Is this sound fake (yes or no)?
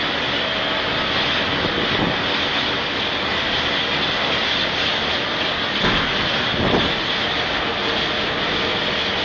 no